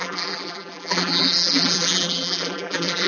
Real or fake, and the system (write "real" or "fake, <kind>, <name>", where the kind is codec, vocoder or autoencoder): fake, vocoder, BigVGAN v2